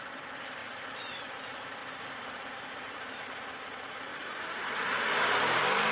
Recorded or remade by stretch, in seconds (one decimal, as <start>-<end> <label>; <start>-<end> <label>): 0.0-1.8 remade; 1.8-2.7 recorded; 2.7-4.1 remade; 4.1-5.4 recorded; 5.4-5.9 remade